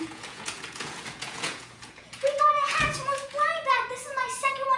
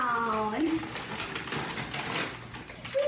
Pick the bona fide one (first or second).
second